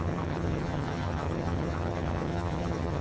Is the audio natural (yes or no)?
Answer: no